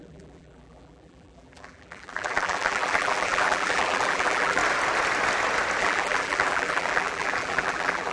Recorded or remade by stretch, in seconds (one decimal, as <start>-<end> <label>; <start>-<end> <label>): 0.0-4.6 remade; 4.6-5.8 recorded; 5.8-8.1 remade